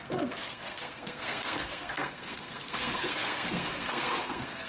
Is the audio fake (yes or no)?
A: yes